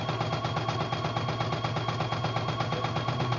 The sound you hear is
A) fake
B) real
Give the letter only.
B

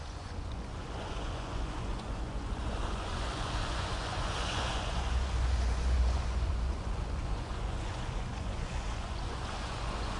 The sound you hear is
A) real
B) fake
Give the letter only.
B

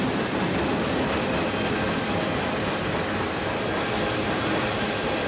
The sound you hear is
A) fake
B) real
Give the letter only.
B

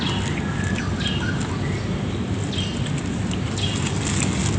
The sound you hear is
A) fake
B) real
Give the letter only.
B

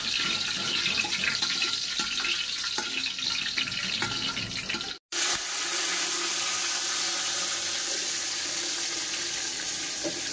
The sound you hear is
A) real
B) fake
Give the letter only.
A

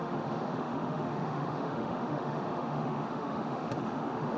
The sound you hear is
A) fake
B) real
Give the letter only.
A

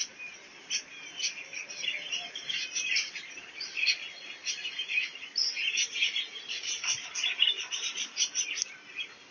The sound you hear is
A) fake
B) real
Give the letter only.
A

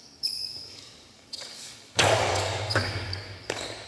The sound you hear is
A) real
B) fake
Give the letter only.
B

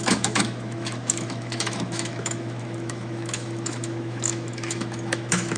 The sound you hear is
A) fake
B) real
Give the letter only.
A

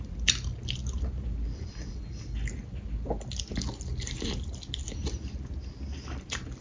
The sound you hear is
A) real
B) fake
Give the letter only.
A